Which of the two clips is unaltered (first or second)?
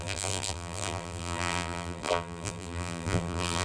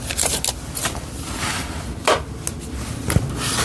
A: second